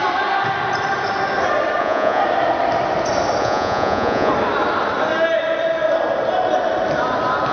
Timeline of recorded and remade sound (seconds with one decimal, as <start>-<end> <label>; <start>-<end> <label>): 0.0-1.8 recorded; 1.8-2.2 remade; 2.2-3.4 recorded; 3.4-4.3 remade; 4.3-7.5 recorded